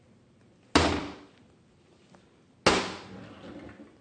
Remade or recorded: recorded